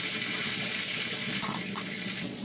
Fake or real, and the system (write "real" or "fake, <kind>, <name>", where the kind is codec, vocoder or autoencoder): fake, vocoder, Vocos